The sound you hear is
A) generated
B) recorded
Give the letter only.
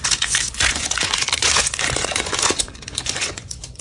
A